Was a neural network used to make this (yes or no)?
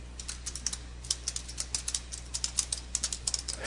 no